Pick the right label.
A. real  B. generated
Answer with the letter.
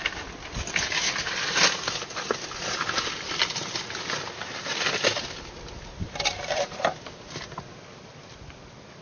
A